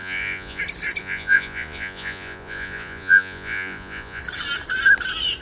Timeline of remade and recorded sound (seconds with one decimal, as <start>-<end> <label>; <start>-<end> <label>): 0.0-0.6 remade; 0.6-1.0 recorded; 1.0-4.2 remade; 4.2-5.4 recorded